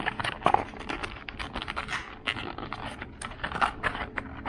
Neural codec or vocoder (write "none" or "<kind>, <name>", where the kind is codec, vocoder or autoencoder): none